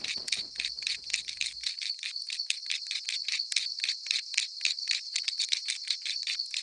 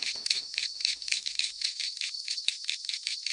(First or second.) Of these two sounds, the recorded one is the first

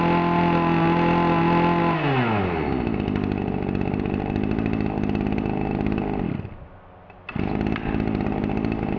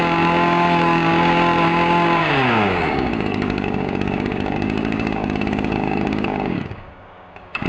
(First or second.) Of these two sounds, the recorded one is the first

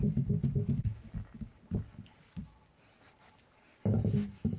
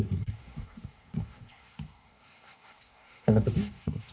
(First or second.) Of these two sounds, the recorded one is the first